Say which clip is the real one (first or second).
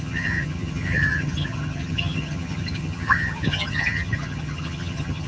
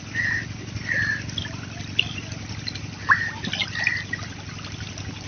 second